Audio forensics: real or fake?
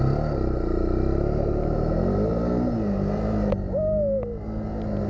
real